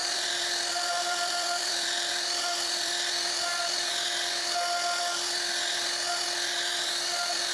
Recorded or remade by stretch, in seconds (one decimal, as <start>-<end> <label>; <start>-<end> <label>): 0.0-3.9 remade; 3.9-7.5 recorded